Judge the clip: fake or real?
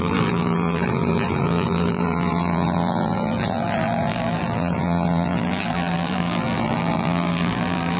fake